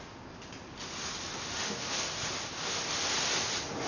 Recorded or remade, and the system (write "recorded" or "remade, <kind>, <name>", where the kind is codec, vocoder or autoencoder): recorded